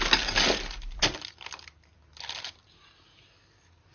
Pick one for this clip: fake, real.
real